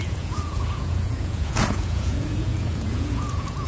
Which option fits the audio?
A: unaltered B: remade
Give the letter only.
B